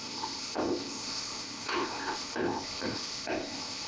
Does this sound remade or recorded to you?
remade